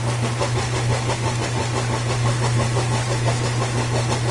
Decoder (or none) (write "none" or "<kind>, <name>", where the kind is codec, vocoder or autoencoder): none